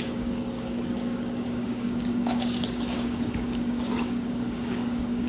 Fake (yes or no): yes